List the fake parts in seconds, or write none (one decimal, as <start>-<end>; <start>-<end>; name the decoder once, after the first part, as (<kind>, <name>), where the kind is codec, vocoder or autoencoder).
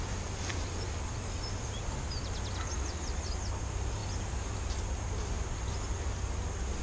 none